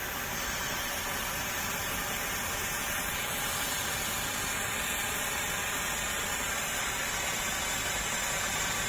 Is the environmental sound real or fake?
real